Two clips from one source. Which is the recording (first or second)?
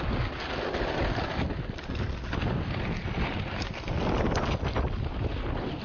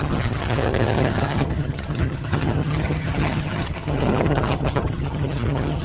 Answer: first